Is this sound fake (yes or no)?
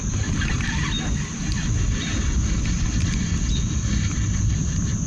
no